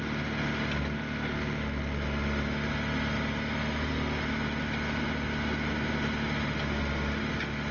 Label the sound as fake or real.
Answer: real